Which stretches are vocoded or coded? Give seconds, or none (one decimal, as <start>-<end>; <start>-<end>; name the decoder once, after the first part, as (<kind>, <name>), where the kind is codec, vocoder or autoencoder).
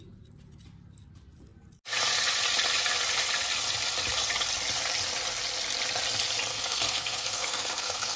6.5-8.2 (codec, SNAC)